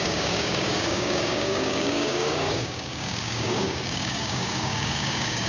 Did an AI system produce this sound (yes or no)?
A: yes